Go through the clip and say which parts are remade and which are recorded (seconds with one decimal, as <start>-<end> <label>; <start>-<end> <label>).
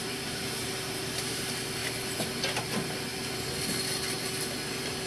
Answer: 0.0-0.7 remade; 0.7-5.1 recorded